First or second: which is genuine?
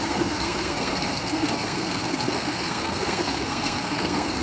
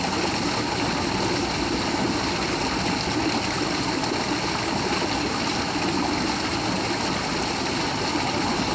second